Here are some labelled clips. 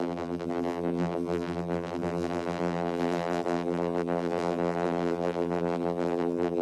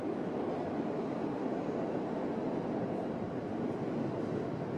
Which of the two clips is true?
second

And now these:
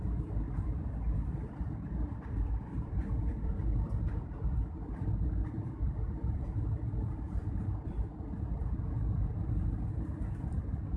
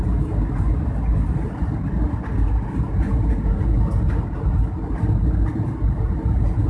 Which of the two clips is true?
second